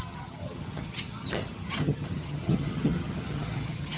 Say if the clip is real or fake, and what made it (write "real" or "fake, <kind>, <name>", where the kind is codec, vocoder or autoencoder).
fake, vocoder, HiFi-GAN